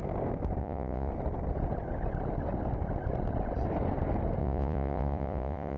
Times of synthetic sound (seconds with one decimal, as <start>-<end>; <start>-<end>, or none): 0.6-1.1; 4.4-5.8